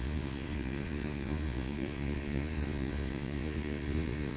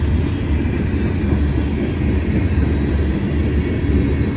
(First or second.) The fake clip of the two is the first